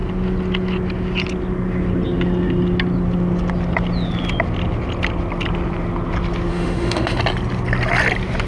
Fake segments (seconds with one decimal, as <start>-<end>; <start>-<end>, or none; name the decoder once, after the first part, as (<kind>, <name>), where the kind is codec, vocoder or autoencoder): 6.5-7.2 (autoencoder, DAC-VAE)